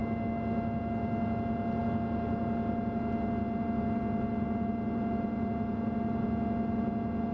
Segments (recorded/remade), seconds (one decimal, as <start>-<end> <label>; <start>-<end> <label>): 0.0-7.3 recorded